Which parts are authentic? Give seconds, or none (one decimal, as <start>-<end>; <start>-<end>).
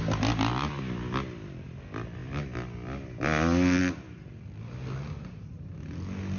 0.0-6.4